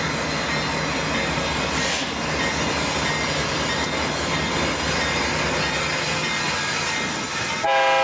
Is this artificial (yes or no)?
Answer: no